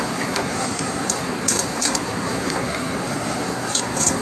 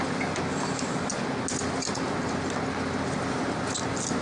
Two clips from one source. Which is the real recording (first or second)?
second